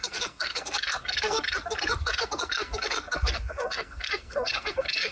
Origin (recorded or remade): remade